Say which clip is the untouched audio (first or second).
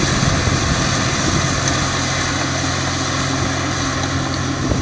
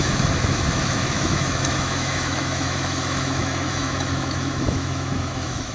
first